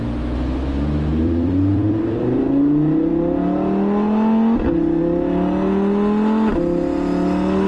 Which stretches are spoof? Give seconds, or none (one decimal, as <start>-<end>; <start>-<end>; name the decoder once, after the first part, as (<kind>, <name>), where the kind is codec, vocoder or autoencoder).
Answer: 1.1-2.4 (vocoder, BigVGAN v2)